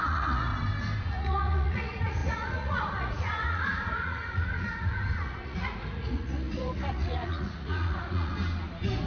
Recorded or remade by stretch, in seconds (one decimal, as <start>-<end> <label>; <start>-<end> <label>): 0.0-0.5 remade; 0.5-1.0 recorded; 1.0-8.3 remade; 8.3-9.1 recorded